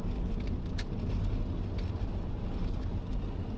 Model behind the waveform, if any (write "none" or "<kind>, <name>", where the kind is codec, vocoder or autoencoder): none